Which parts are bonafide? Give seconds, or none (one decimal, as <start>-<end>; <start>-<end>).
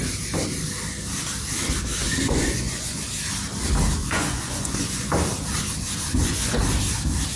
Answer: 0.0-2.0; 3.0-4.0; 5.1-6.1; 6.6-7.4